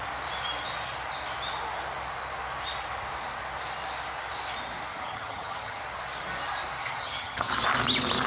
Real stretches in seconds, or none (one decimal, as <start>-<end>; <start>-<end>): 0.0-4.9; 5.8-6.8; 7.5-8.3